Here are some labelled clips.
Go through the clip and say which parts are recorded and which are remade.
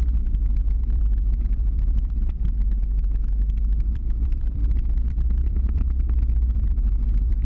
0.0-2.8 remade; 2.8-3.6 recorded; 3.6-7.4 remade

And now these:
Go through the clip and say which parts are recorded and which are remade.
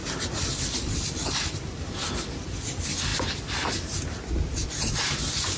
0.0-5.6 recorded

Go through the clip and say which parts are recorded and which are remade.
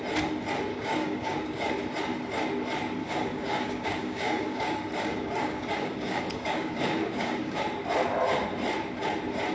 0.0-0.7 recorded; 0.7-1.7 remade; 1.7-3.0 recorded; 3.0-7.6 remade; 7.6-9.5 recorded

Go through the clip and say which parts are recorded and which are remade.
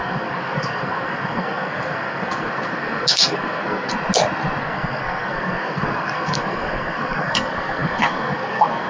0.0-3.9 remade; 3.9-4.6 recorded; 4.6-8.9 remade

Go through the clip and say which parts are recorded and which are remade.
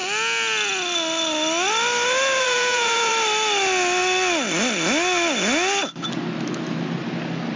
0.0-2.4 recorded; 2.4-3.1 remade; 3.1-7.6 recorded